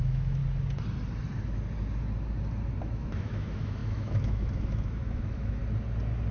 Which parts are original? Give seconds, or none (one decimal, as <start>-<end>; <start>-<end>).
0.4-2.8; 5.6-6.3